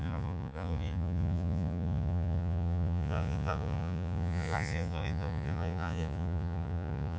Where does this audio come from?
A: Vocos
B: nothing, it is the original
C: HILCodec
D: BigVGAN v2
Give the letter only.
A